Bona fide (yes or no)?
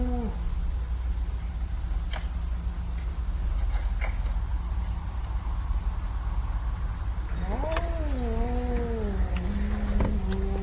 yes